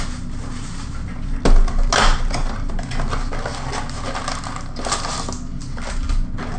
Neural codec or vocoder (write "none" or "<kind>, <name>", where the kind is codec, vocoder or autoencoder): none